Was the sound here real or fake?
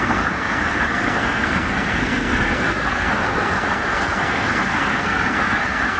fake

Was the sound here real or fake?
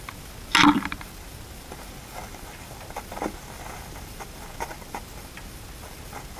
real